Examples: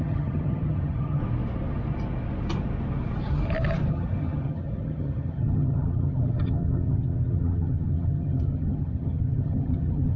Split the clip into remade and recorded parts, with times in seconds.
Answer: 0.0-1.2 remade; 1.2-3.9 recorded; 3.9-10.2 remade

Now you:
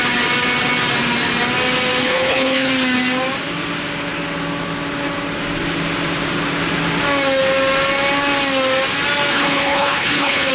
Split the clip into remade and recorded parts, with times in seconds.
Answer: 0.0-2.0 recorded; 2.0-2.7 remade; 2.7-9.3 recorded; 9.3-10.5 remade